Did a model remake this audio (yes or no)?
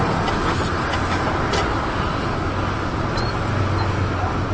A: no